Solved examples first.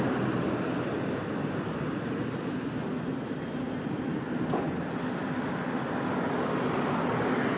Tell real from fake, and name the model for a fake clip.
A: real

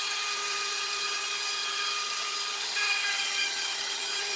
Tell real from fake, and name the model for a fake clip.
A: fake, vocoder, HiFi-GAN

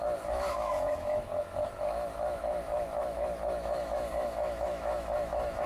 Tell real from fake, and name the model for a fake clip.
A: fake, autoencoder, DAC-VAE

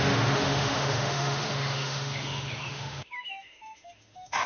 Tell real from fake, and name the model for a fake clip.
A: fake, autoencoder, DAC-VAE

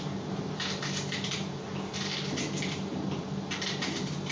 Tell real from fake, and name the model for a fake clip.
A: real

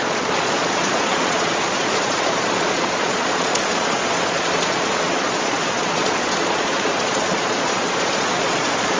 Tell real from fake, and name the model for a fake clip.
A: fake, vocoder, Vocos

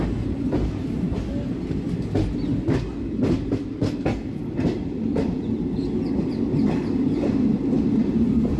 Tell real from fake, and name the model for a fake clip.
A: real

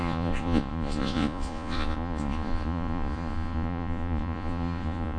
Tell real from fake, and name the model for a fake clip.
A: fake, vocoder, Vocos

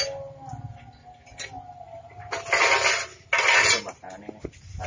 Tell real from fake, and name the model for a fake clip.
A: real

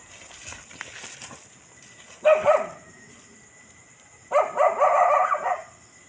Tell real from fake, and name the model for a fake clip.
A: real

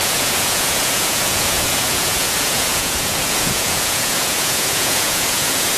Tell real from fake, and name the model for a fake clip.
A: fake, vocoder, Vocos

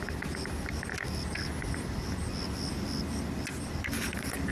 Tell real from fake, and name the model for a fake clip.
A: real